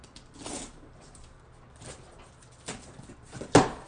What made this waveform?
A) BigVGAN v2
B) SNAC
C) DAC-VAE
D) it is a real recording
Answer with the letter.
D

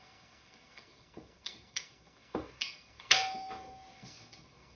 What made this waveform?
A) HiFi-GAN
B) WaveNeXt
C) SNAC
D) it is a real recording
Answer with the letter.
C